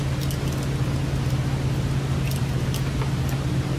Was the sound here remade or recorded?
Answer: recorded